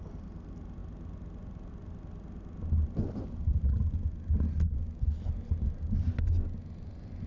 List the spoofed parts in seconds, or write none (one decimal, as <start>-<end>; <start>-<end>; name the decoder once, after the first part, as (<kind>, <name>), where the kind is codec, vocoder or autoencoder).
none